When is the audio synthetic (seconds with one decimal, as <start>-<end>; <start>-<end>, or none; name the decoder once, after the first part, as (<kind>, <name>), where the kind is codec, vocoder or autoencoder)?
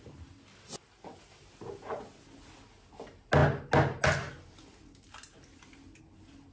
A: none